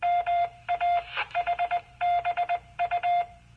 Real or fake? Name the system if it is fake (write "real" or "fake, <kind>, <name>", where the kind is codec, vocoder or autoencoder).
fake, vocoder, BigVGAN v2